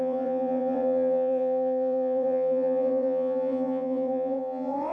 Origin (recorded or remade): remade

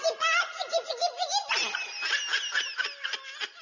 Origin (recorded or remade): recorded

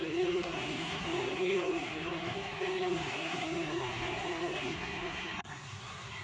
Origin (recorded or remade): remade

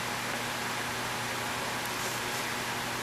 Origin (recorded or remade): recorded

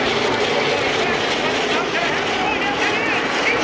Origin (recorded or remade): recorded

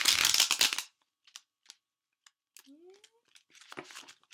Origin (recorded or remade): recorded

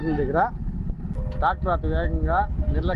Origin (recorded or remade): recorded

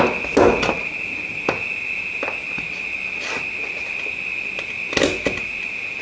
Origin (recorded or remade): recorded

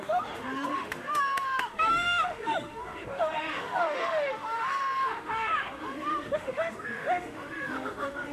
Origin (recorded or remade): remade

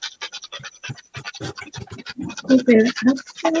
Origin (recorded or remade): recorded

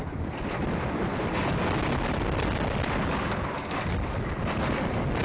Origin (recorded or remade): recorded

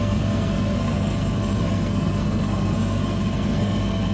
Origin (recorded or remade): remade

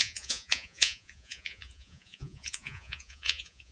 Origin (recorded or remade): remade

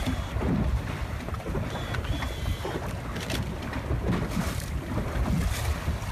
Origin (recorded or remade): recorded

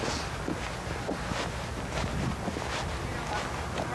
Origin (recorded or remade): recorded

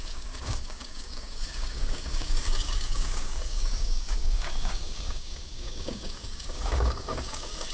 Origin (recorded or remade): remade